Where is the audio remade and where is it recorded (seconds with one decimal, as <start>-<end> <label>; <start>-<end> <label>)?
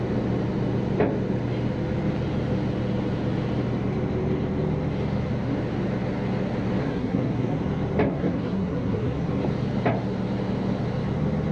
0.0-6.8 recorded; 6.8-7.6 remade; 7.6-8.1 recorded; 8.1-9.3 remade; 9.3-11.5 recorded